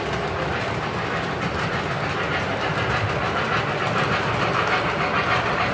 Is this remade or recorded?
recorded